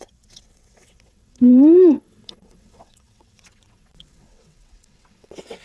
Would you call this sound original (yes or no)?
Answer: no